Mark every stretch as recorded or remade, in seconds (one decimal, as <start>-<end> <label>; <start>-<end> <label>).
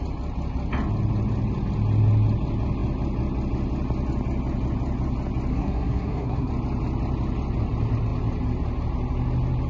0.0-5.5 recorded; 5.5-6.5 remade; 6.5-9.7 recorded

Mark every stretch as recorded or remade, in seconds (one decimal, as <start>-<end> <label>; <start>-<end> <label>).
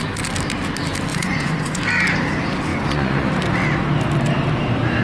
0.0-1.1 recorded; 1.1-1.8 remade; 1.8-2.7 recorded; 2.7-3.3 remade; 3.3-5.0 recorded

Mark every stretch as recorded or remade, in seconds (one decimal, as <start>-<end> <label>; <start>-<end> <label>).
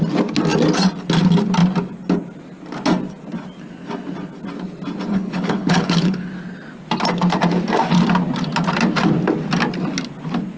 0.0-5.1 recorded; 5.1-6.3 remade; 6.3-10.6 recorded